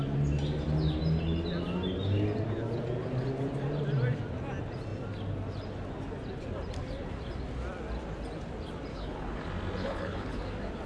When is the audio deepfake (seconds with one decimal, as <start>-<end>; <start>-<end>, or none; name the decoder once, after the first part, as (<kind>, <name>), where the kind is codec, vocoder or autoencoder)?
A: 8.9-9.4 (codec, HILCodec); 9.8-10.4